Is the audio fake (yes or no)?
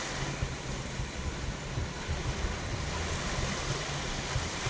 no